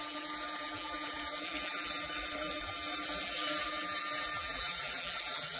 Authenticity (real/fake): fake